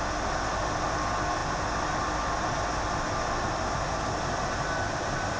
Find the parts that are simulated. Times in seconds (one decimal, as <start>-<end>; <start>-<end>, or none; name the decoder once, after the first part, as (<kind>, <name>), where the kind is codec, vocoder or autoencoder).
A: none